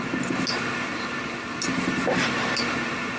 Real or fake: real